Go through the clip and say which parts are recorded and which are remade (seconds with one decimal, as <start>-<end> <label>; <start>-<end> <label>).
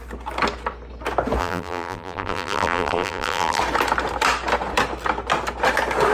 0.0-1.4 recorded; 1.4-3.6 remade; 3.6-6.1 recorded